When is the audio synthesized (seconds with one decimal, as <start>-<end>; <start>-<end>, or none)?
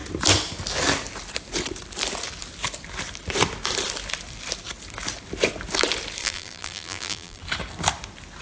6.2-7.4